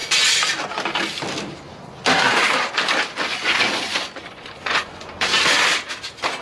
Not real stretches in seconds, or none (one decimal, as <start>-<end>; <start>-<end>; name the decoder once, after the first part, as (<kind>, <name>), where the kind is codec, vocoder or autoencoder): 3.2-5.3 (vocoder, Vocos)